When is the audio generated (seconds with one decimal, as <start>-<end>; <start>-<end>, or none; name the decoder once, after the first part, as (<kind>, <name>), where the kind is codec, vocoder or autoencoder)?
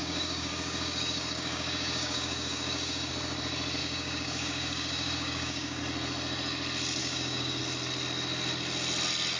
0.0-3.1 (codec, DAC); 3.8-5.8; 7.0-7.6